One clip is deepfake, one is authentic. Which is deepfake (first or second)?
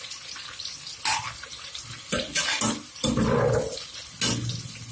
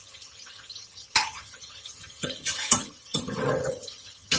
second